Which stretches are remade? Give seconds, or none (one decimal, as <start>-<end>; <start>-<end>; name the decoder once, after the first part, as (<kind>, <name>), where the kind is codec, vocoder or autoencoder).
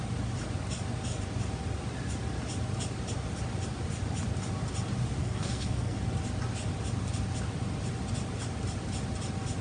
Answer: 5.2-6.0 (codec, SNAC)